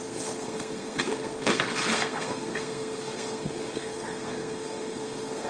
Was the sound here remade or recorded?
remade